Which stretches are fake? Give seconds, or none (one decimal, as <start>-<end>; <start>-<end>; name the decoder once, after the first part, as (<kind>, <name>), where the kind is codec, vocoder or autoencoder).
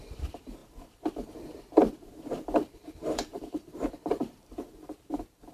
0.0-5.5 (vocoder, BigVGAN v2)